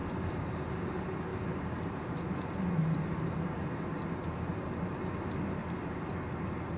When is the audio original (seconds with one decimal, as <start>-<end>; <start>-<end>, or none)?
0.7-1.3; 3.2-5.6; 6.2-6.8